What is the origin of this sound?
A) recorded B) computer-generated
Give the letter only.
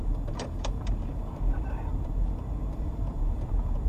B